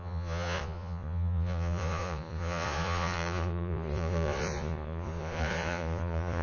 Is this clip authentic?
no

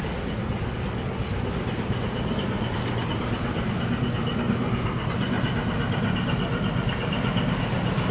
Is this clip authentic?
yes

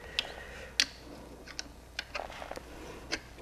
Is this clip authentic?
yes